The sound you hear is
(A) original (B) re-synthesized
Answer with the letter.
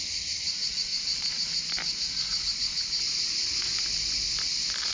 A